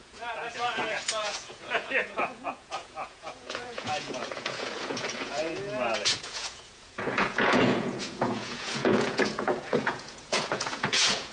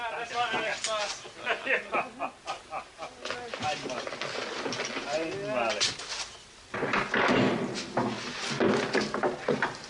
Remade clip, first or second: first